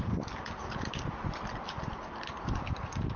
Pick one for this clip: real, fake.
real